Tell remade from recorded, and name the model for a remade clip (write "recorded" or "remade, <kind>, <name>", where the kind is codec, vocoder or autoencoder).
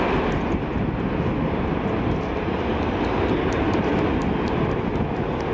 recorded